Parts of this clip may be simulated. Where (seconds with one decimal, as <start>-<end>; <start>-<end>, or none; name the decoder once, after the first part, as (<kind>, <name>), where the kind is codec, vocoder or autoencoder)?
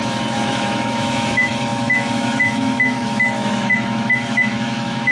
0.0-5.1 (autoencoder, DAC-VAE)